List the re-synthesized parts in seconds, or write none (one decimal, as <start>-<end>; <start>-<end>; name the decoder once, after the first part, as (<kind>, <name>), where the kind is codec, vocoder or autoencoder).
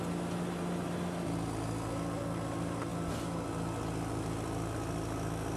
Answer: none